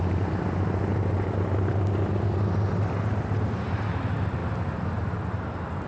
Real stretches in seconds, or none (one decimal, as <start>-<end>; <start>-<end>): 0.0-5.9